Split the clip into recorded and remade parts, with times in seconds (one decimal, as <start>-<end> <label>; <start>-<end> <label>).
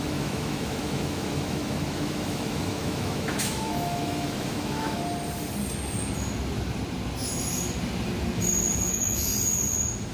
0.0-5.0 remade; 5.0-8.9 recorded; 8.9-9.3 remade; 9.3-10.1 recorded